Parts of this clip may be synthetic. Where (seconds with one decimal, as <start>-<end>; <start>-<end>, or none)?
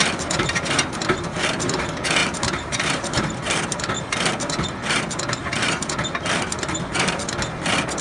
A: 2.2-3.3